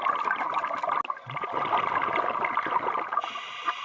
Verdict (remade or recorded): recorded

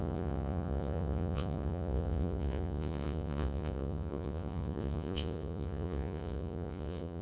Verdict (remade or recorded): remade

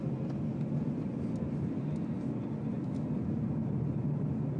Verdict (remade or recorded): recorded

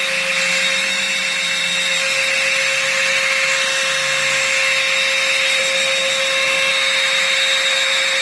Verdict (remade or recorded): recorded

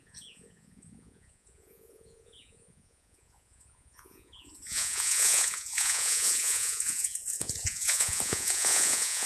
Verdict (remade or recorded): remade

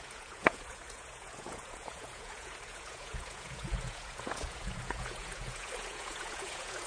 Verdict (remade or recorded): remade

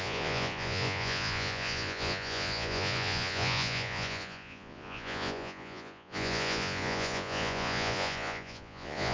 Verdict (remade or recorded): remade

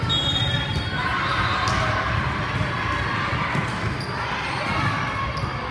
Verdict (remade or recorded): recorded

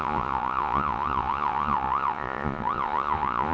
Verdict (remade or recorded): remade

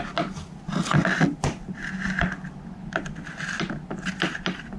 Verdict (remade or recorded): recorded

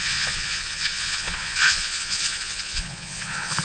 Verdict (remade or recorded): remade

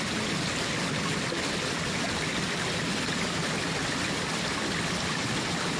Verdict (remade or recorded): recorded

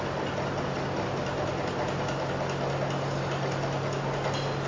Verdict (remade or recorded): recorded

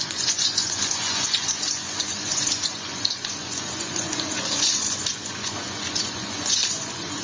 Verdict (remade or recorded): remade